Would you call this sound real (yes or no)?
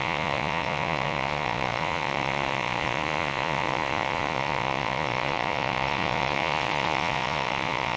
no